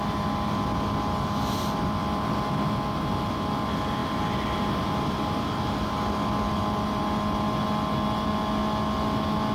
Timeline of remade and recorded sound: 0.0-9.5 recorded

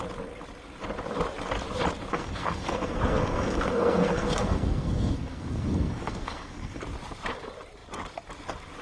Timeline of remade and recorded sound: 0.0-2.1 recorded; 2.1-6.8 remade; 6.8-8.8 recorded